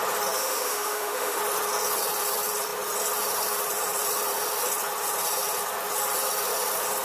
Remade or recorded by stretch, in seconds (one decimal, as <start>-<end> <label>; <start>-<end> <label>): 0.0-0.4 recorded; 0.4-1.4 remade; 1.4-7.0 recorded